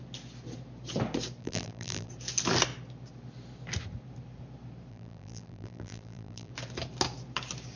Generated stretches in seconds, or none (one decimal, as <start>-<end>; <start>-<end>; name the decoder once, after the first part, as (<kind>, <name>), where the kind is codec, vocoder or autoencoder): 1.4-2.1 (vocoder, BigVGAN v2); 4.9-6.5